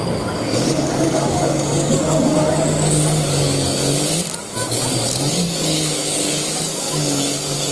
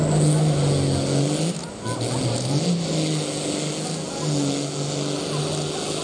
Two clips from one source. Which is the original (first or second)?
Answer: second